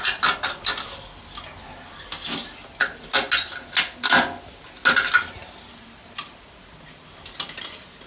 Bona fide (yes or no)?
yes